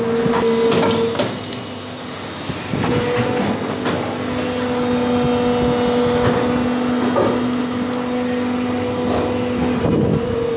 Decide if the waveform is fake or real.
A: real